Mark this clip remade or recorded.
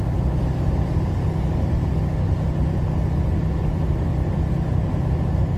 recorded